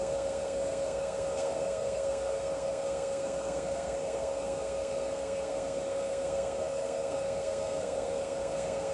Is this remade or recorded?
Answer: remade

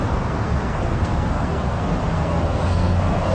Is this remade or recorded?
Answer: remade